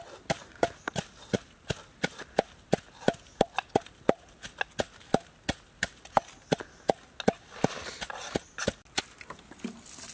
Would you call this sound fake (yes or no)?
no